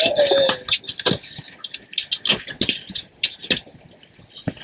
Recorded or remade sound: recorded